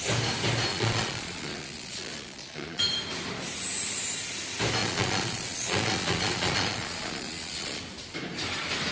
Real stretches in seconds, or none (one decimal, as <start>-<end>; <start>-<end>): 0.0-0.7; 2.8-4.8; 7.8-8.9